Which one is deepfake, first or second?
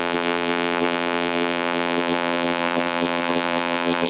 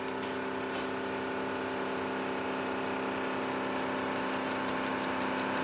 first